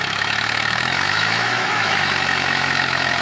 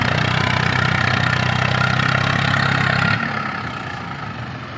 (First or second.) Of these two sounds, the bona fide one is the second